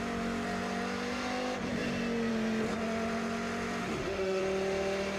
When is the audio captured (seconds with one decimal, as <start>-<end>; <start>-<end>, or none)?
0.0-3.8; 4.4-5.2